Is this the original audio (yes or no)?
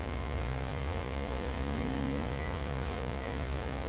no